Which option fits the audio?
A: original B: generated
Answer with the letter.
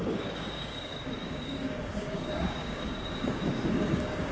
B